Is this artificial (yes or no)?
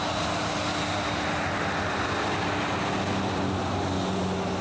no